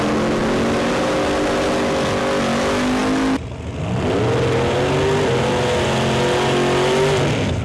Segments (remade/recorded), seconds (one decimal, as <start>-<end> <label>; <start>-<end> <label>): 0.0-7.6 recorded